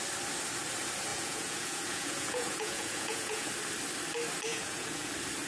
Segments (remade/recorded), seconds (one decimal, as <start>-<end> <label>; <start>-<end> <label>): 0.0-1.1 recorded; 1.1-3.5 remade; 3.5-4.5 recorded; 4.5-5.1 remade; 5.1-5.5 recorded